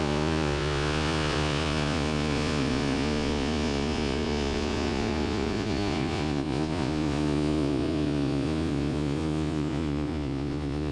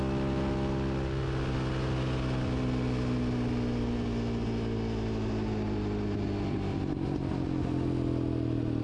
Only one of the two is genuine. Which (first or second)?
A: second